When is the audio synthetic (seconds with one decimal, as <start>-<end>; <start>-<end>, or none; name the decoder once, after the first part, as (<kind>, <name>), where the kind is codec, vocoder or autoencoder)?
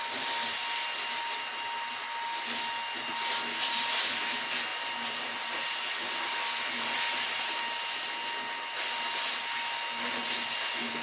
none